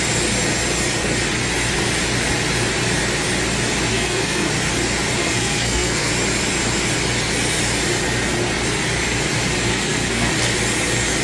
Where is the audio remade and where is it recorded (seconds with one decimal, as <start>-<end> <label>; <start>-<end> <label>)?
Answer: 0.0-3.9 recorded; 3.9-4.5 remade; 4.5-5.2 recorded; 5.2-6.1 remade; 6.1-9.7 recorded; 9.7-10.3 remade; 10.3-11.2 recorded